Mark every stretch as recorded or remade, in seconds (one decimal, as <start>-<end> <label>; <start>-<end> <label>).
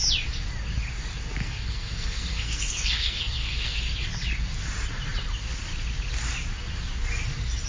0.0-1.4 recorded; 1.4-3.8 remade; 3.8-7.7 recorded